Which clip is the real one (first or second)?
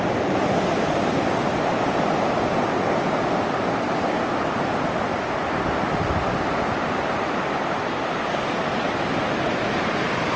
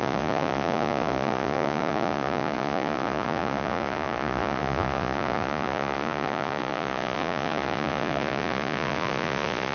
first